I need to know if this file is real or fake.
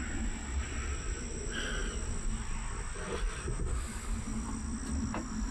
real